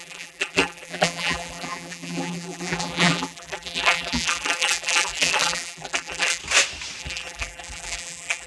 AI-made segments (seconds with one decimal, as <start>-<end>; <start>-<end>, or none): 0.0-6.4; 7.0-8.5